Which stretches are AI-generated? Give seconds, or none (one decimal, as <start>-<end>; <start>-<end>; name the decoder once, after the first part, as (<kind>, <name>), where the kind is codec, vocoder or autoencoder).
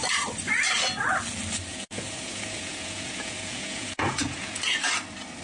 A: 1.7-4.9 (vocoder, Vocos)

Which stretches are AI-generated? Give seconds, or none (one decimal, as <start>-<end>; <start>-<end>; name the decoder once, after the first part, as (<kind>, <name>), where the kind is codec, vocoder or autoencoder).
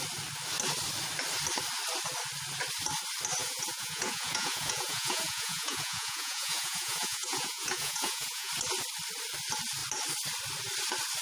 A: 3.4-8.5 (vocoder, Vocos)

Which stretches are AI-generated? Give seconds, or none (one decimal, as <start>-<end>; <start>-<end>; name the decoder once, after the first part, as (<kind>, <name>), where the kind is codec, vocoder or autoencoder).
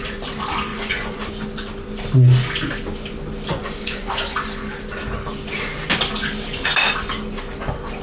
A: 0.7-1.2 (vocoder, Vocos); 3.5-4.1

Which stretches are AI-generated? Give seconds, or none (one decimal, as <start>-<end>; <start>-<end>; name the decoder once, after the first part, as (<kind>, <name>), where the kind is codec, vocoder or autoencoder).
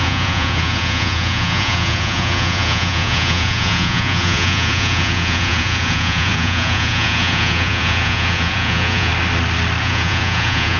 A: 0.0-9.1 (vocoder, Vocos); 9.8-10.8